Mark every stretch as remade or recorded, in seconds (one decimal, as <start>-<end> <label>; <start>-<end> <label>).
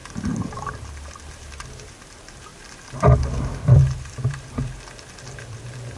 0.0-0.9 remade; 0.9-2.5 recorded; 2.5-6.0 remade